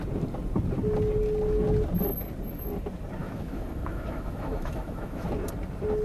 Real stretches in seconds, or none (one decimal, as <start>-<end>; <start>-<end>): 0.0-3.2; 5.3-6.0